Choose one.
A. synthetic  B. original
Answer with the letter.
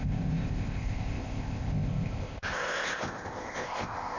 A